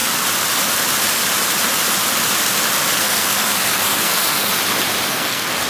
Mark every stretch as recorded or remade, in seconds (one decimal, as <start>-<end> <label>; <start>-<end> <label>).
0.0-3.0 recorded; 3.0-4.5 remade; 4.5-5.1 recorded; 5.1-5.7 remade